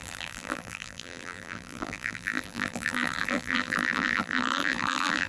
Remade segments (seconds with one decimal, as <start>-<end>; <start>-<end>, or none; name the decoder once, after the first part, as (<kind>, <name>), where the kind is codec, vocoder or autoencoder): 0.0-5.3 (vocoder, BigVGAN v2)